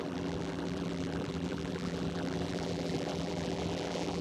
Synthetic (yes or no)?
yes